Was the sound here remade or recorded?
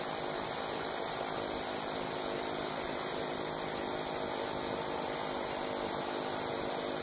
recorded